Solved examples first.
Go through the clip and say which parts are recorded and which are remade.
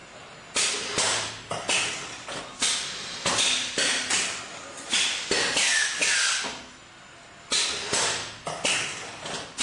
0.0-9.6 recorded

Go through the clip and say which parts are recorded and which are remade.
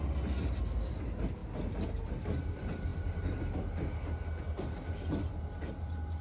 0.0-6.2 recorded